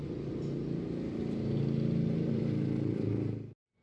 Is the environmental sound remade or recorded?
recorded